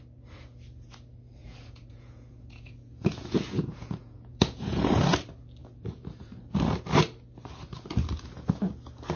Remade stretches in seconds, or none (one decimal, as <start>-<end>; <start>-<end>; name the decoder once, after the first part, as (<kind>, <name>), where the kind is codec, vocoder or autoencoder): 1.4-5.0 (vocoder, Vocos); 5.6-6.3